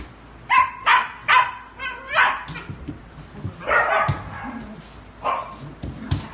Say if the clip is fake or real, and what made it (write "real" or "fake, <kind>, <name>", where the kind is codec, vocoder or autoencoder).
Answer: real